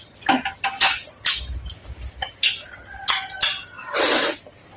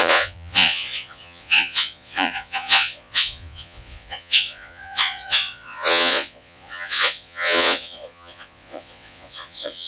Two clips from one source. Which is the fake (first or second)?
second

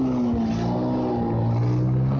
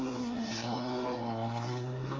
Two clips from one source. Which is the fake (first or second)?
second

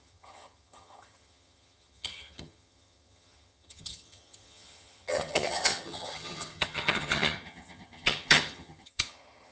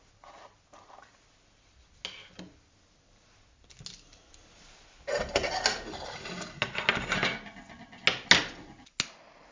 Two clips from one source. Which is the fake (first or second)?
first